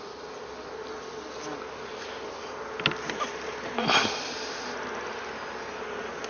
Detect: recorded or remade recorded